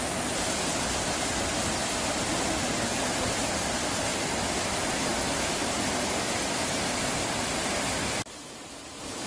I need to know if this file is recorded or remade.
recorded